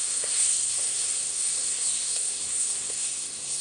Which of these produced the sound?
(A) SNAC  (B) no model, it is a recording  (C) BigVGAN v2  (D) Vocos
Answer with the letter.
A